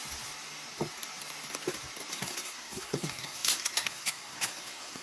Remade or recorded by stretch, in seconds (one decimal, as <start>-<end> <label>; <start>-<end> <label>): 0.0-2.1 recorded; 2.1-5.0 remade